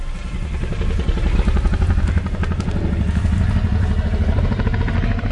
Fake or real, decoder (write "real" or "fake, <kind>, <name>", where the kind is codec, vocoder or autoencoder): real